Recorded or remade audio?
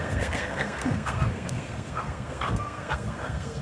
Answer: remade